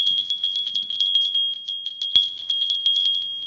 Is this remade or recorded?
recorded